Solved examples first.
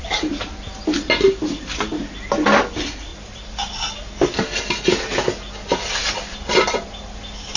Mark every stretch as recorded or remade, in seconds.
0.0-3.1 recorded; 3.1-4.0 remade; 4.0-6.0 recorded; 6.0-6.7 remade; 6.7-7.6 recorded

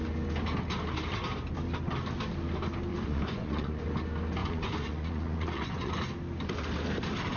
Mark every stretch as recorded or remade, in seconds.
0.0-2.9 recorded; 2.9-3.8 remade; 3.8-4.4 recorded; 4.4-5.9 remade; 5.9-7.4 recorded

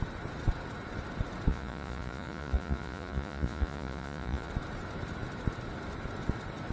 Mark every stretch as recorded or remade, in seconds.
0.0-1.5 recorded; 1.5-4.5 remade; 4.5-6.7 recorded

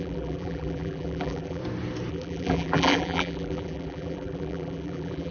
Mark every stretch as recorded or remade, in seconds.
0.0-1.6 remade; 1.6-2.1 recorded; 2.1-5.3 remade

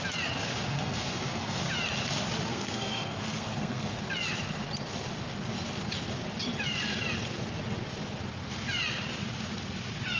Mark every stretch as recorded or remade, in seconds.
0.0-0.7 recorded; 0.7-1.6 remade; 1.6-2.5 recorded; 2.5-4.0 remade; 4.0-10.2 recorded

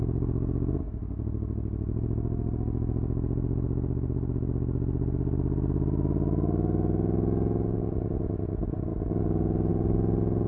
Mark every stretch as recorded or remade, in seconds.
0.0-10.5 recorded

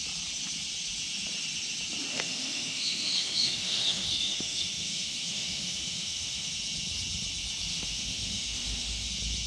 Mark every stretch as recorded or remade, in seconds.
0.0-2.1 recorded; 2.1-6.5 remade; 6.5-7.7 recorded; 7.7-9.1 remade; 9.1-9.5 recorded

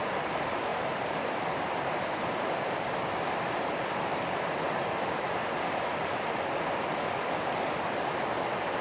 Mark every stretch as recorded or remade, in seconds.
0.0-8.8 recorded